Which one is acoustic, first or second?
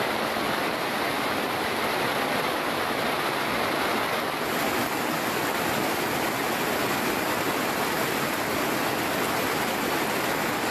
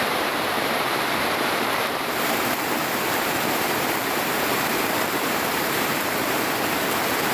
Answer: first